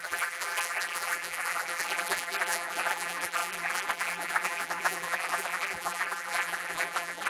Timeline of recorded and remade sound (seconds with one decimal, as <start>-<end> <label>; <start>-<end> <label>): 0.0-7.3 remade